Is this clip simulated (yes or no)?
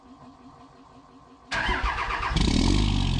no